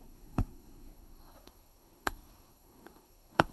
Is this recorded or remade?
remade